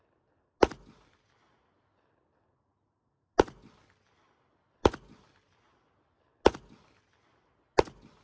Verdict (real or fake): real